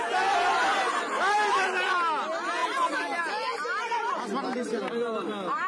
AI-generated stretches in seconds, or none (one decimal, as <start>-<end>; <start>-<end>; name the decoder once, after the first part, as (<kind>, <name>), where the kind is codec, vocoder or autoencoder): none